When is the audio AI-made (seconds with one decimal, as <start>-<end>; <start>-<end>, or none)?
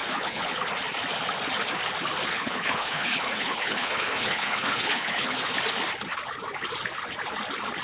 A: 0.0-0.5; 2.3-5.5